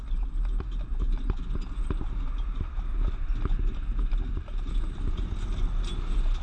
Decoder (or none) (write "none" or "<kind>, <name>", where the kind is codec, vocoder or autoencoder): none